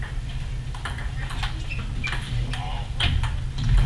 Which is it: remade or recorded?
recorded